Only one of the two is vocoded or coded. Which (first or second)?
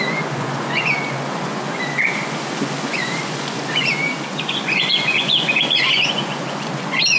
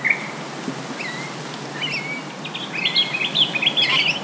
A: first